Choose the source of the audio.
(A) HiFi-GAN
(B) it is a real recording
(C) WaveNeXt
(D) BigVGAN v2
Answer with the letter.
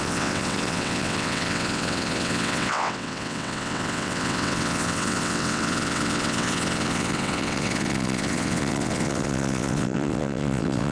C